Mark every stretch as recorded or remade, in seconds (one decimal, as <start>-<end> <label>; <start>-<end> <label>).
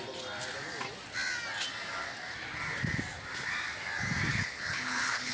0.0-4.3 recorded; 4.3-5.3 remade